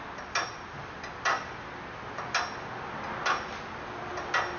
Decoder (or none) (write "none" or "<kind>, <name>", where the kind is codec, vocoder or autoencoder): none